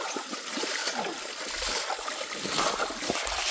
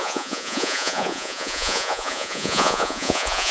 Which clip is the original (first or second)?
first